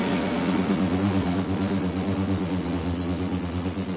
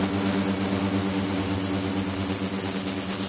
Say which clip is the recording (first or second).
second